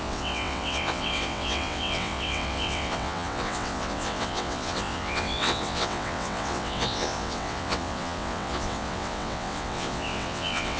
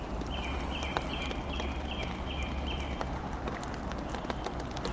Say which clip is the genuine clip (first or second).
second